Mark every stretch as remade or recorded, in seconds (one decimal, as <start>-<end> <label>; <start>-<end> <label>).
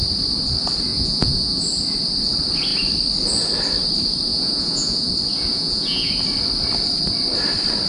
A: 0.0-0.9 recorded; 0.9-1.6 remade; 1.6-4.3 recorded; 4.3-5.1 remade; 5.1-5.5 recorded; 5.5-6.1 remade; 6.1-7.9 recorded